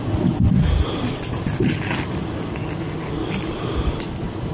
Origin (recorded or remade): recorded